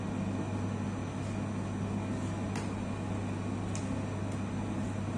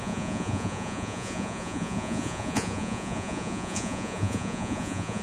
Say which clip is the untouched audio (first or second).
first